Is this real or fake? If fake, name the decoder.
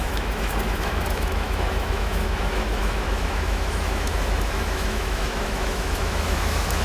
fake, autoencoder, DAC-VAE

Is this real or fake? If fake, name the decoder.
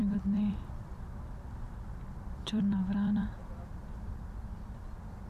fake, vocoder, BigVGAN v2